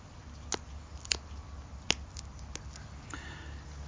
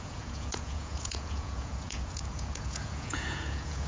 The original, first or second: first